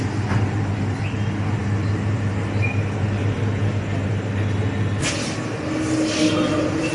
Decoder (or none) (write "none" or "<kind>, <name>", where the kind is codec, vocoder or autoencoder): none